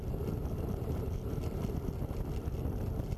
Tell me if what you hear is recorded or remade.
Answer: recorded